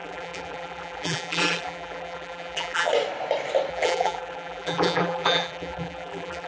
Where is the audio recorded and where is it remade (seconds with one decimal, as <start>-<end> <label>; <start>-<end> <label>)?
0.0-2.9 remade; 2.9-3.7 recorded; 3.7-6.5 remade